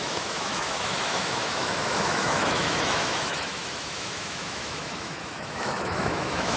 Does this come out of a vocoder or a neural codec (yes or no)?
yes